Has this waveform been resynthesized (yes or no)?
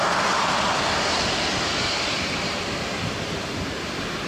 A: no